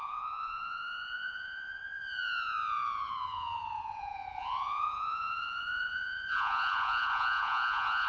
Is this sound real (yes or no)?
no